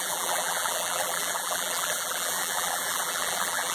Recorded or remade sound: remade